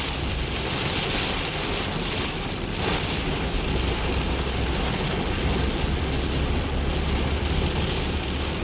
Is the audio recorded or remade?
recorded